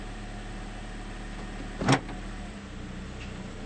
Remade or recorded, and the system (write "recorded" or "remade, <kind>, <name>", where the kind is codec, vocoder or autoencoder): recorded